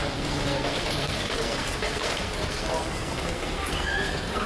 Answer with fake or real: fake